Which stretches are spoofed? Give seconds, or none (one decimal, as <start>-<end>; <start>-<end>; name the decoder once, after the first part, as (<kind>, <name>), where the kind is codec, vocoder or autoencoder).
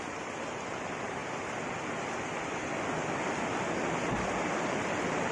none